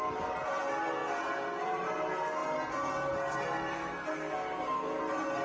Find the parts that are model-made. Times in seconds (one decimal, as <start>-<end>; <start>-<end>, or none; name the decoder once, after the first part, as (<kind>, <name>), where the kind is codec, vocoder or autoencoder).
3.7-5.0 (codec, SNAC)